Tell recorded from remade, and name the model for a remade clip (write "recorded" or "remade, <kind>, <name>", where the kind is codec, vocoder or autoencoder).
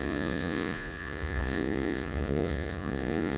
remade, vocoder, Vocos